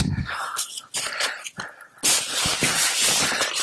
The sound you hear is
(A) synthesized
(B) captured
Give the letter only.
B